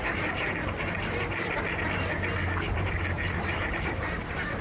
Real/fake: fake